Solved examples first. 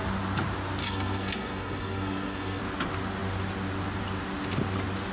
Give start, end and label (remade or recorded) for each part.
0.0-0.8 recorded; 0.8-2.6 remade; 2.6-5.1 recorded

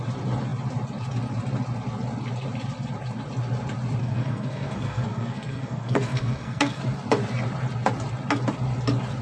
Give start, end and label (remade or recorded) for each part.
0.0-4.0 recorded; 4.0-6.8 remade; 6.8-9.2 recorded

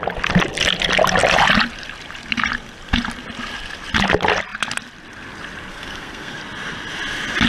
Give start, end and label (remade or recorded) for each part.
0.0-5.7 recorded; 5.7-6.4 remade; 6.4-7.5 recorded

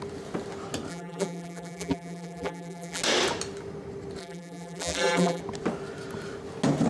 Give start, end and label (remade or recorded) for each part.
0.0-0.9 recorded; 0.9-3.0 remade; 3.0-4.2 recorded; 4.2-5.4 remade; 5.4-6.9 recorded

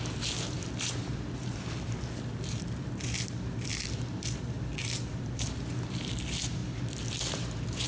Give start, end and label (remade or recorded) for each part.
0.0-7.9 remade

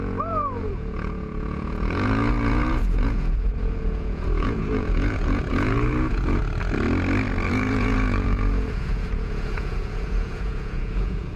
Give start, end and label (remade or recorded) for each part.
0.0-6.4 remade; 6.4-7.5 recorded; 7.5-11.4 remade

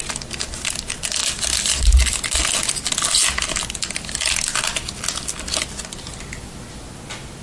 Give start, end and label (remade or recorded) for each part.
0.0-7.4 recorded

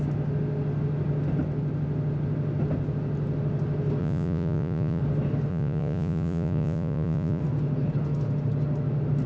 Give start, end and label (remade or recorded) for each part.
0.0-4.0 recorded; 4.0-5.0 remade; 5.0-5.5 recorded; 5.5-7.4 remade; 7.4-9.3 recorded